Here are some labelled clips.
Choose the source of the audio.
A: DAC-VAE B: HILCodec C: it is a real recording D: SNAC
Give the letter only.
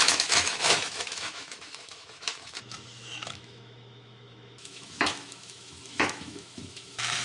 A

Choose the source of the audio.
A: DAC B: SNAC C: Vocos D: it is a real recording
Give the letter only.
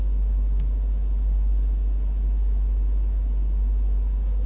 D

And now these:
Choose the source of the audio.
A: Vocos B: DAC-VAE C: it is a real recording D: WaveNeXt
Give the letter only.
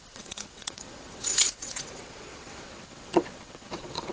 D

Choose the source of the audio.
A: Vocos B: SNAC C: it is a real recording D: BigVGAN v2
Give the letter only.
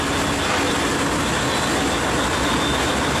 C